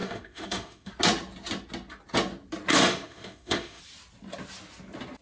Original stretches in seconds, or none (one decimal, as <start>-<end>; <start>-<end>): 0.9-2.7; 3.8-5.2